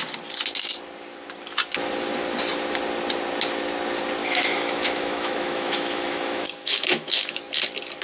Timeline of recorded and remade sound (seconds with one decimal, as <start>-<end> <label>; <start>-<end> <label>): 0.0-4.2 recorded; 4.2-7.4 remade; 7.4-8.0 recorded